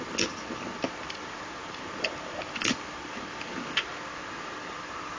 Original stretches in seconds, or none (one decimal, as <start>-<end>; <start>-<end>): 0.0-5.2